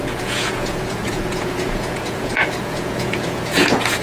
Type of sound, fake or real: fake